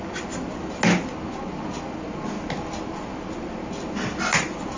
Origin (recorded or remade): recorded